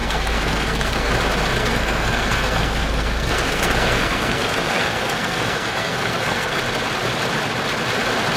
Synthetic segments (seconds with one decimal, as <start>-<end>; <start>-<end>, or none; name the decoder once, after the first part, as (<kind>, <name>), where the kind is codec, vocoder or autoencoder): 0.0-1.1 (codec, SNAC); 1.6-6.6